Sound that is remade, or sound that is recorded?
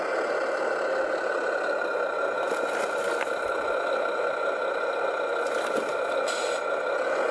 recorded